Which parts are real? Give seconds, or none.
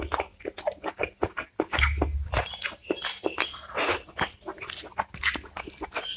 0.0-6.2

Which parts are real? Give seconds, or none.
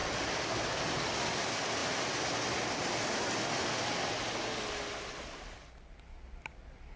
0.0-7.0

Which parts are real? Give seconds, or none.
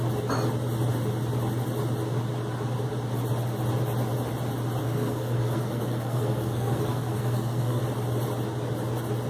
0.0-4.8; 7.8-9.3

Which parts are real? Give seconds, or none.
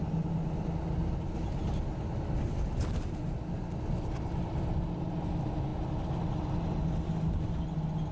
0.0-8.1